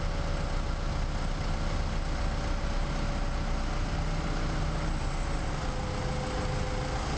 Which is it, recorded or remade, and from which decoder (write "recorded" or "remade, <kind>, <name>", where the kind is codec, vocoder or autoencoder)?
recorded